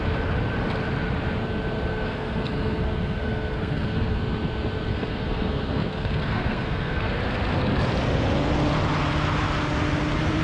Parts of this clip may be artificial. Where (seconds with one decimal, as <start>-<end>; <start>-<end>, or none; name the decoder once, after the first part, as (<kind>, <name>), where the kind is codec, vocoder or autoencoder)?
1.9-4.2 (codec, SNAC); 4.9-7.2